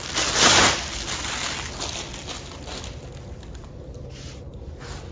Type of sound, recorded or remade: recorded